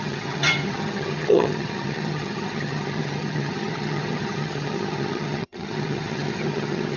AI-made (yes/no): yes